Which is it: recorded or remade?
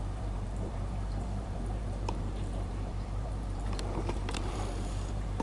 remade